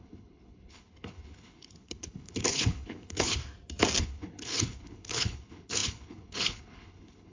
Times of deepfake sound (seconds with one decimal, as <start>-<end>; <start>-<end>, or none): 0.0-3.4; 4.0-7.3